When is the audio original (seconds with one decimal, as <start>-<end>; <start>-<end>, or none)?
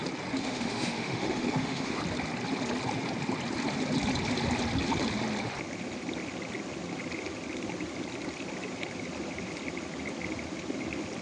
0.0-0.4; 2.0-11.2